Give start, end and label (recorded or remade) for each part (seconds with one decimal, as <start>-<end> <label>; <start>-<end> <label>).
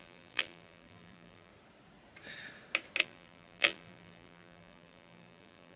0.0-1.5 remade; 1.5-3.0 recorded; 3.0-5.8 remade